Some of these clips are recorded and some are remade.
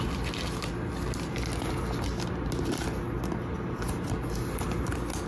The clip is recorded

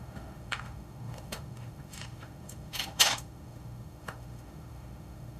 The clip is remade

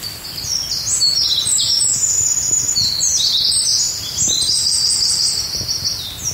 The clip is recorded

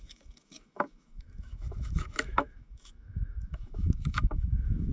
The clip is remade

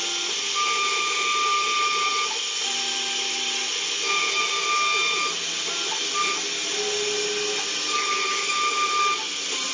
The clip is recorded